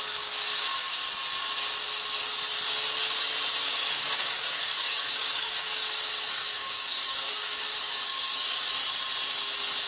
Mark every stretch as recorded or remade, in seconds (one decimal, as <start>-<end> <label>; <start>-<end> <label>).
0.0-1.0 remade; 1.0-3.6 recorded; 3.6-8.8 remade; 8.8-9.9 recorded

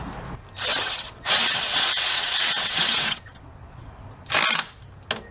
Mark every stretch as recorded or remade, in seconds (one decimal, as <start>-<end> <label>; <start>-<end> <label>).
0.0-0.7 recorded; 0.7-3.9 remade; 3.9-5.3 recorded

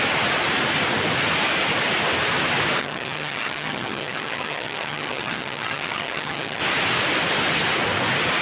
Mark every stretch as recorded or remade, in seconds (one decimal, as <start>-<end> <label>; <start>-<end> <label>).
0.0-2.8 recorded; 2.8-6.6 remade; 6.6-8.4 recorded